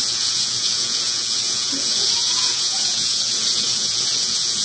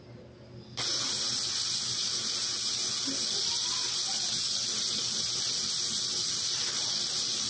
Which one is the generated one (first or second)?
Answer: first